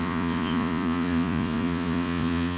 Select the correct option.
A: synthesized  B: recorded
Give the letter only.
A